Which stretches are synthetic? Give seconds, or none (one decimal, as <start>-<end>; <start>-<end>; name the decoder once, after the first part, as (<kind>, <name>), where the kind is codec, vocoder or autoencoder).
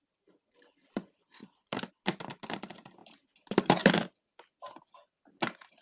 1.4-1.9 (vocoder, BigVGAN v2); 3.0-3.9